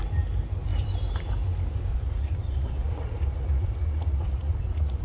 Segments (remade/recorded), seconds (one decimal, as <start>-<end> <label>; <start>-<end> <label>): 0.0-1.9 recorded; 1.9-5.0 remade